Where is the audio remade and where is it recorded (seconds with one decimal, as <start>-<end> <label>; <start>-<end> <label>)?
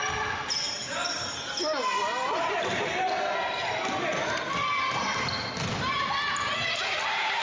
0.0-7.4 recorded